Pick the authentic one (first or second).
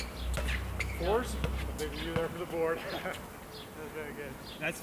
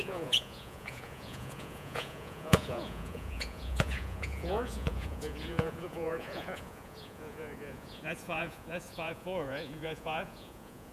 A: first